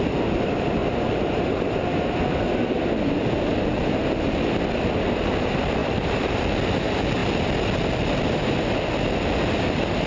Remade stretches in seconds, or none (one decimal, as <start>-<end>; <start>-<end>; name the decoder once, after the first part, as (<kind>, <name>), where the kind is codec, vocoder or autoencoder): 0.8-1.5 (vocoder, BigVGAN v2); 5.8-6.4